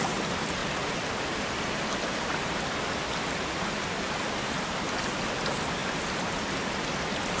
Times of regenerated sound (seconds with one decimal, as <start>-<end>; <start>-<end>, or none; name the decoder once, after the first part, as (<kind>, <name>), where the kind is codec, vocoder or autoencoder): none